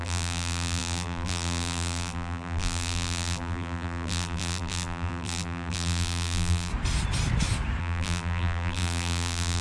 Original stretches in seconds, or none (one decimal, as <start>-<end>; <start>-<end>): 6.7-7.8